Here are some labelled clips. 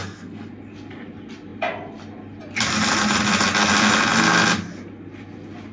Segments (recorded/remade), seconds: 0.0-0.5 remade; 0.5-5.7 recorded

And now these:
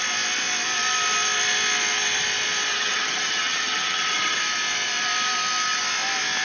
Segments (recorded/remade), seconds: 0.0-2.7 recorded; 2.7-4.4 remade; 4.4-6.4 recorded

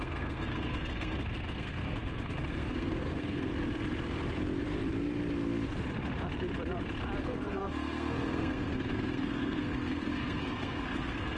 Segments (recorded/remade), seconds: 0.0-3.5 remade; 3.5-7.2 recorded; 7.2-11.4 remade